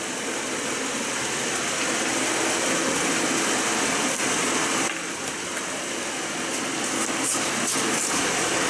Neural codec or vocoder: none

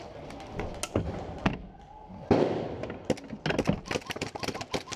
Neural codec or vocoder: none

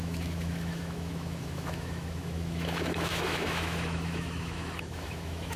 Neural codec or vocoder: autoencoder, DAC-VAE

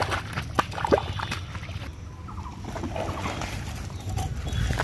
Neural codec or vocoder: none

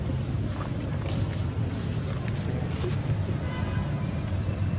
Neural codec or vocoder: none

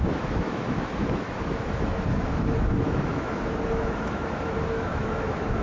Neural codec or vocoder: autoencoder, DAC-VAE